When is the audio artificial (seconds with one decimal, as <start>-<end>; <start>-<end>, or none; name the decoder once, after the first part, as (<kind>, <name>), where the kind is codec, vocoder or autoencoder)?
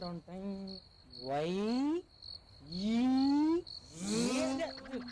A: none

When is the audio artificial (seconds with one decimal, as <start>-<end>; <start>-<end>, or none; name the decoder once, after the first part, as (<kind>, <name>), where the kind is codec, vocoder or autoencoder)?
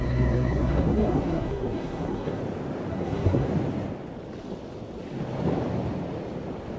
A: 0.0-2.4 (codec, SNAC); 2.9-3.5